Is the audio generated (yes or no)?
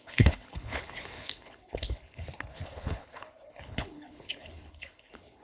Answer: yes